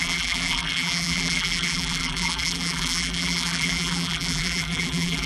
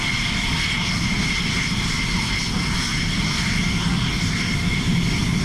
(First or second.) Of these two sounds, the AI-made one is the first